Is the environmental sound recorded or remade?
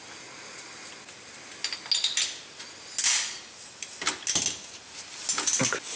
recorded